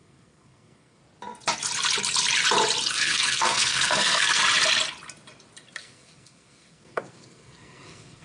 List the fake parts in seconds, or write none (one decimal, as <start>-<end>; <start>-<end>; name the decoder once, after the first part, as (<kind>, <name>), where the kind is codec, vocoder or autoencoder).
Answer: 0.0-1.0 (codec, SNAC); 2.9-4.4; 5.8-8.2